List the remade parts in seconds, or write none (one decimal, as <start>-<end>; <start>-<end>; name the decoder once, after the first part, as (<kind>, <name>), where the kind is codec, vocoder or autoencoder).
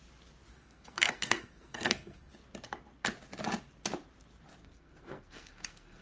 0.5-2.3 (codec, SNAC); 4.6-6.0